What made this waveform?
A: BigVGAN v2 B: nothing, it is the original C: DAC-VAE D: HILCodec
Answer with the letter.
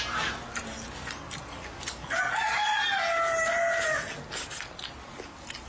B